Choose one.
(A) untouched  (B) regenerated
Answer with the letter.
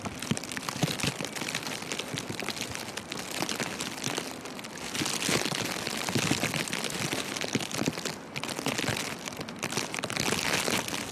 A